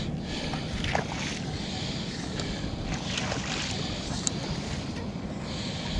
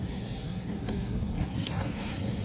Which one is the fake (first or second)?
second